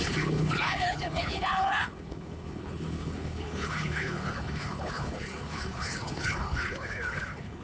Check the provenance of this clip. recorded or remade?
remade